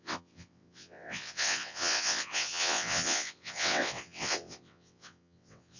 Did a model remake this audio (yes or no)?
yes